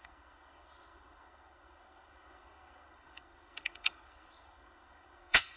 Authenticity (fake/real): fake